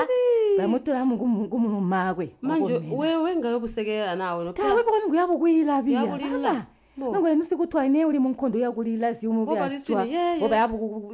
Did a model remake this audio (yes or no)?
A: no